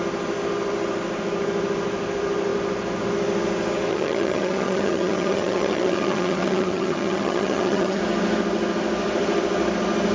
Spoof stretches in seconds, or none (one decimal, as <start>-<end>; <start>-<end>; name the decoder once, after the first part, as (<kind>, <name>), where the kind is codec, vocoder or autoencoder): 3.9-8.0 (vocoder, HiFi-GAN)